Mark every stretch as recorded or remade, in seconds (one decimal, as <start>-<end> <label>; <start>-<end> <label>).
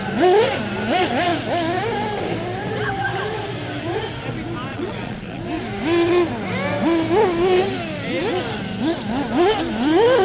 0.0-4.7 recorded; 4.7-5.4 remade; 5.4-10.2 recorded